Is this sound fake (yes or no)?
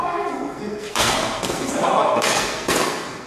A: yes